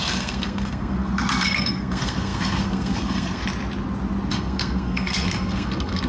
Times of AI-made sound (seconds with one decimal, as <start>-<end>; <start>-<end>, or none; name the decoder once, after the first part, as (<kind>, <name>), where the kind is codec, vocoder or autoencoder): 0.0-3.4 (codec, SNAC); 4.3-6.1